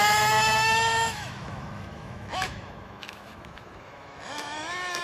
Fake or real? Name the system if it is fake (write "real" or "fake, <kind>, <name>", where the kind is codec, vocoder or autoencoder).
fake, autoencoder, DAC-VAE